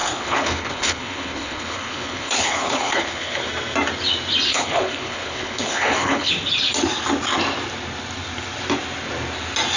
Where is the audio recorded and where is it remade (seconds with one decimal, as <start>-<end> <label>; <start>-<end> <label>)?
0.0-3.5 remade; 3.5-4.5 recorded; 4.5-6.3 remade; 6.3-9.8 recorded